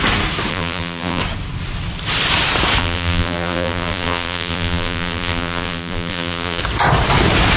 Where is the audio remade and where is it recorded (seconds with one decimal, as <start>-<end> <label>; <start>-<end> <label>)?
0.0-0.5 recorded; 0.5-1.2 remade; 1.2-2.8 recorded; 2.8-6.6 remade; 6.6-7.6 recorded